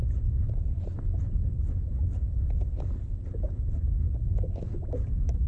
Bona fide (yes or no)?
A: yes